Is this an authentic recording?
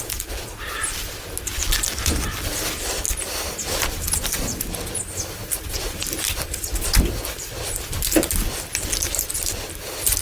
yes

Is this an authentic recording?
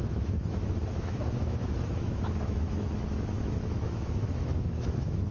no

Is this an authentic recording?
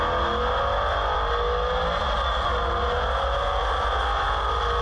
yes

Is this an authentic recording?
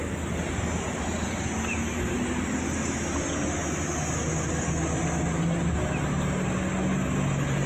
yes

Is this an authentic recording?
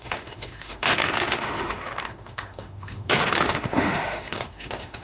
no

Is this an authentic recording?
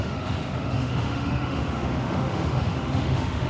no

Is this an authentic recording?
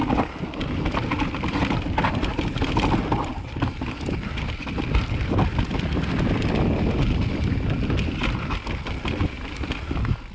yes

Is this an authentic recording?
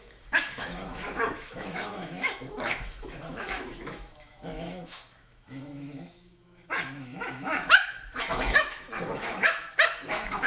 no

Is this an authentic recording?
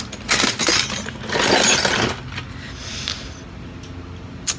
yes